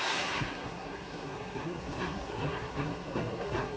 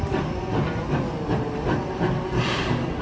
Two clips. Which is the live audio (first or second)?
second